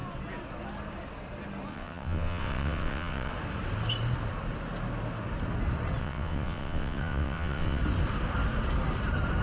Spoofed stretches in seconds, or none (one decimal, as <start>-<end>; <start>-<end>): 1.7-3.3; 6.0-7.8